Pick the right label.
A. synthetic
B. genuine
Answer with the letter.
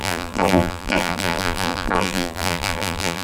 A